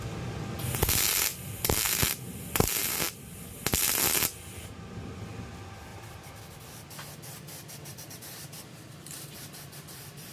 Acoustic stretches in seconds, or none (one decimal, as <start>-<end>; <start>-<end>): 0.0-1.3; 3.4-5.9; 6.4-7.9